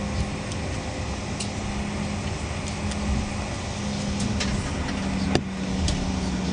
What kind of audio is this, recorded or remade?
recorded